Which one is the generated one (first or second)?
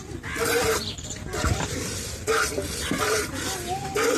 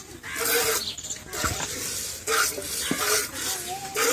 first